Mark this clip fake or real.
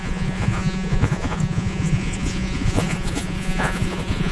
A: fake